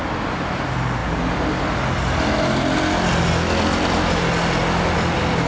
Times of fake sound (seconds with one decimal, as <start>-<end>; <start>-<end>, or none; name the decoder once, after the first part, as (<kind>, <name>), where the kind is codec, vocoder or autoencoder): none